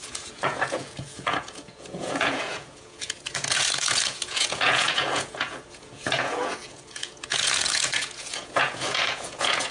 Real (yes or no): no